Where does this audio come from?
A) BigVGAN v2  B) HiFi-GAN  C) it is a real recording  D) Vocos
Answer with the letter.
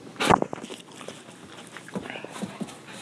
C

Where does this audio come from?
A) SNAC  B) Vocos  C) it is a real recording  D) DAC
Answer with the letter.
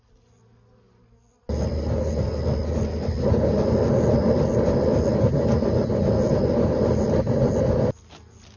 C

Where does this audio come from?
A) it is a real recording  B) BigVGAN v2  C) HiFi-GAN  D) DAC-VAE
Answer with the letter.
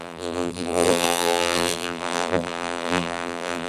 B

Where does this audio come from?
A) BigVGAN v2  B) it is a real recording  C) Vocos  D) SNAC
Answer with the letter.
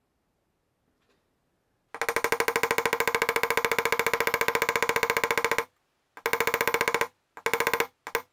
B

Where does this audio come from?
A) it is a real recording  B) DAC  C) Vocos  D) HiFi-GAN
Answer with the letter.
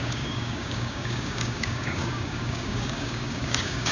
B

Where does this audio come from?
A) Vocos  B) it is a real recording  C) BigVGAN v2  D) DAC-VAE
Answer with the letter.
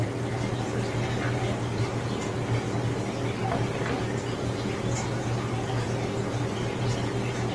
B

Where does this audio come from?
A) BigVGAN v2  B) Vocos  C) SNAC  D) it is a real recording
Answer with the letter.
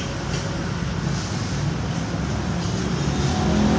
D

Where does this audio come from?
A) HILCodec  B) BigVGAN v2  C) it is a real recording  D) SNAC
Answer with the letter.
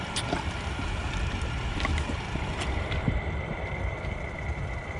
B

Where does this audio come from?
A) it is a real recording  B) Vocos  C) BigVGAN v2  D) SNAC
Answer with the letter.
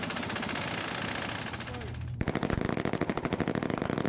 A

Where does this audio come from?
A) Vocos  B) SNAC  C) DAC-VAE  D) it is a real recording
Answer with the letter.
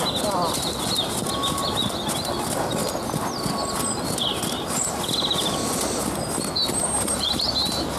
D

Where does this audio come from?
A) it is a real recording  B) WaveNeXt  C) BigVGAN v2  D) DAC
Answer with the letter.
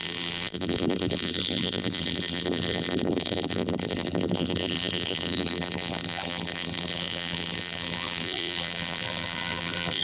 C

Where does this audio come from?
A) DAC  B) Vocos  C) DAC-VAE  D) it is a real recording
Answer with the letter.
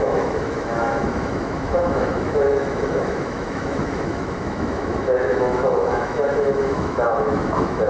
C